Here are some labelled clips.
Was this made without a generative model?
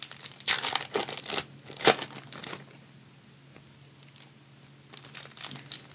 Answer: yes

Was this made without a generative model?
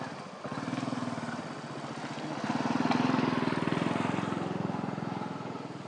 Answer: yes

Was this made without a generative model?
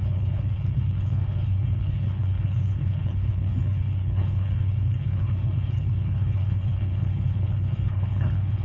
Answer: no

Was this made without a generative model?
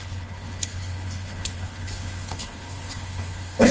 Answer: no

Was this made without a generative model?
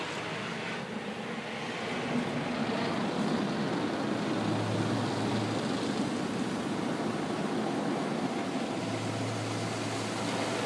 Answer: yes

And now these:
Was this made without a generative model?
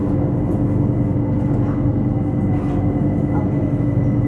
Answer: yes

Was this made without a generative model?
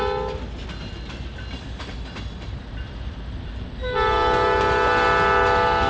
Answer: yes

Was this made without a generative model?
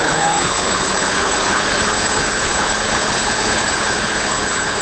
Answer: no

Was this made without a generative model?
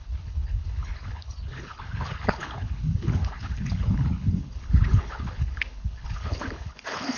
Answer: no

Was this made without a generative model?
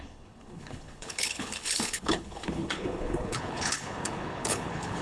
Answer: no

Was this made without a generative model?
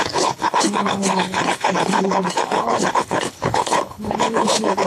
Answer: no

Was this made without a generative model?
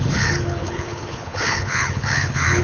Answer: no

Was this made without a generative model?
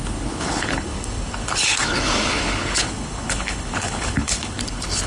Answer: no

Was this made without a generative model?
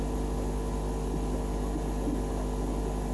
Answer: yes